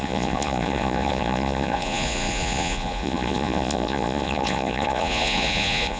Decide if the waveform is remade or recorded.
remade